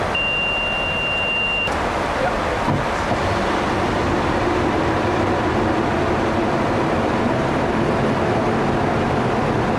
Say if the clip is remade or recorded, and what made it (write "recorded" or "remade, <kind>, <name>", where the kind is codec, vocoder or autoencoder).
recorded